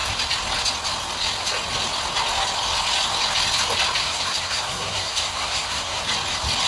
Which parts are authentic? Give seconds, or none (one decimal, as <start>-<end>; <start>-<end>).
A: 0.0-4.0; 6.0-6.7